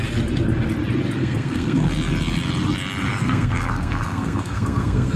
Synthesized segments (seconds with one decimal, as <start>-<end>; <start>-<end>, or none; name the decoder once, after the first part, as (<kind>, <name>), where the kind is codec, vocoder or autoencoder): 1.2-1.9 (codec, SNAC); 3.1-5.2